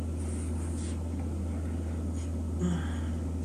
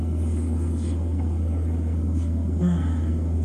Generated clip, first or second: second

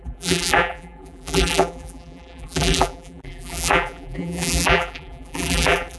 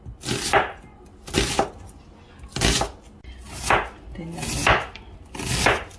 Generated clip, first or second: first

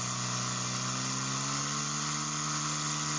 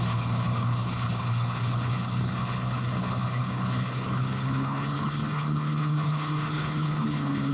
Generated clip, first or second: second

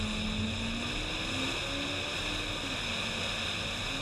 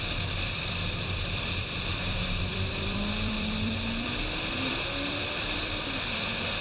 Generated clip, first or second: second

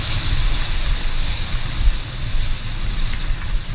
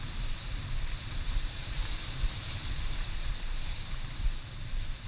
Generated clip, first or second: second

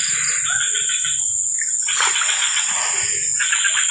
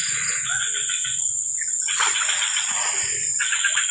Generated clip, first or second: second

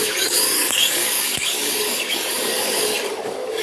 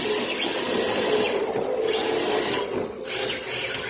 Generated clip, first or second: first